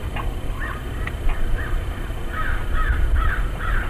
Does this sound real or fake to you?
real